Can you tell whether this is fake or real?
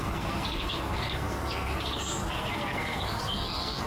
fake